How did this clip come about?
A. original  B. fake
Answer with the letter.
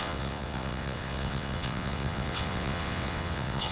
B